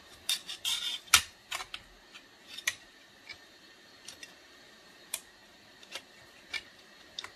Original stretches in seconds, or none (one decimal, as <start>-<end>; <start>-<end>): 0.4-2.4